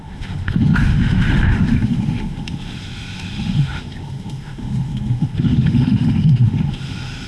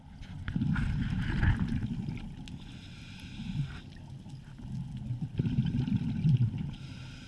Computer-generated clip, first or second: first